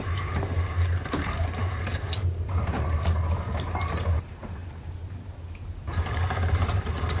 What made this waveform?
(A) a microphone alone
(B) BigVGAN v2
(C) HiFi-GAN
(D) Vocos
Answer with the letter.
B